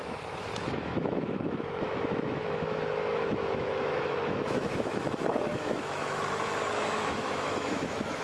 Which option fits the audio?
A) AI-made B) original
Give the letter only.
A